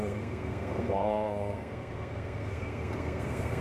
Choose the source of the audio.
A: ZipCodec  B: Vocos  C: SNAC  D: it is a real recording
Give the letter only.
C